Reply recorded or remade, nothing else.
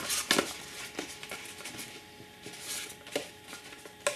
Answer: recorded